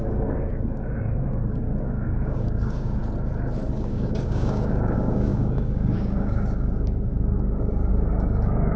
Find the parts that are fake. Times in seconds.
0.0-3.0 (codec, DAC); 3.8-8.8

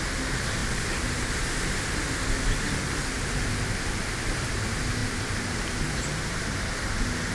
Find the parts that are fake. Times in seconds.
5.0-6.7 (vocoder, BigVGAN v2)

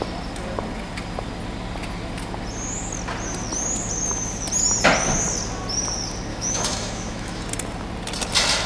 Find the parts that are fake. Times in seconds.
6.3-7.4 (autoencoder, DAC-VAE)

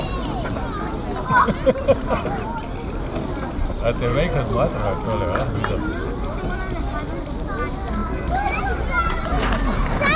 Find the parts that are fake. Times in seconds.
none

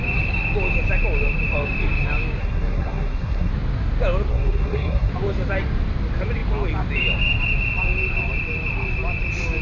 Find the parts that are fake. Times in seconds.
2.4-3.5 (codec, SNAC); 4.3-5.1